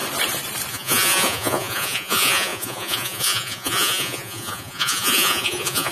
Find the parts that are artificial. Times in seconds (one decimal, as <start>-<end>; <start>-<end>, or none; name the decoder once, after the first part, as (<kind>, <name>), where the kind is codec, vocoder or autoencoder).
0.7-5.9 (vocoder, Vocos)